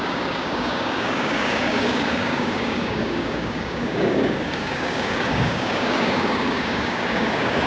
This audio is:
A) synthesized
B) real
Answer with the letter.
A